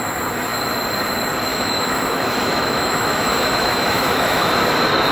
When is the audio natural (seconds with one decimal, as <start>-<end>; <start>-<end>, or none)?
0.0-1.5; 4.6-5.1